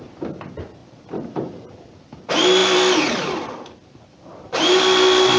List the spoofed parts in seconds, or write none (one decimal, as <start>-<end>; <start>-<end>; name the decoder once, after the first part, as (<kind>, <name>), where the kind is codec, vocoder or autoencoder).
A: 0.8-2.2 (vocoder, BigVGAN v2); 2.6-4.8